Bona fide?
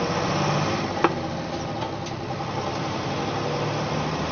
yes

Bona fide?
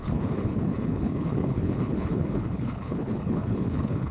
no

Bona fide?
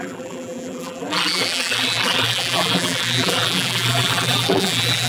no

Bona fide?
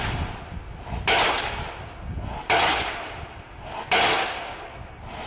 yes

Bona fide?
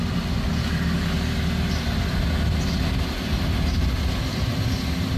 yes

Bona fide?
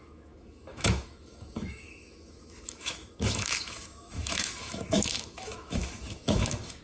no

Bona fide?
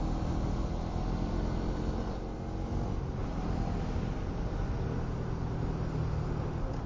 yes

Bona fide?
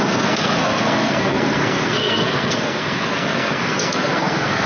no